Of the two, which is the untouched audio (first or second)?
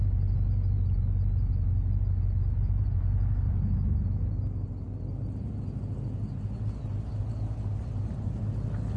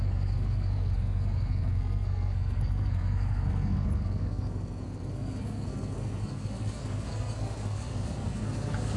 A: first